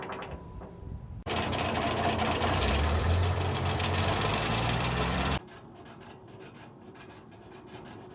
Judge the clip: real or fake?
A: fake